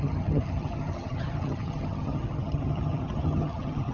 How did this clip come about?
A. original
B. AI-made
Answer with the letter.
B